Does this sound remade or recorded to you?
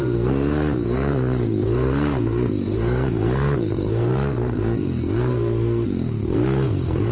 remade